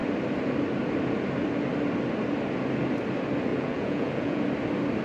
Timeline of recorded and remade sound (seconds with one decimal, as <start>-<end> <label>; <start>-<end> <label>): 0.0-3.5 recorded; 3.5-4.4 remade; 4.4-5.0 recorded